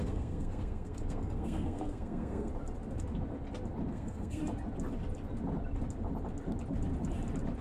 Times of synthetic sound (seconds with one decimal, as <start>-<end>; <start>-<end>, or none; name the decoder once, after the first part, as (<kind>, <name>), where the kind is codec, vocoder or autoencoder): 0.0-2.5 (codec, SNAC); 3.9-4.4

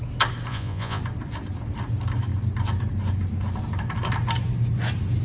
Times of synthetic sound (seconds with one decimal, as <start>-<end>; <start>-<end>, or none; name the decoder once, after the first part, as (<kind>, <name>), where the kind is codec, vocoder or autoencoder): 0.5-1.0 (vocoder, Vocos)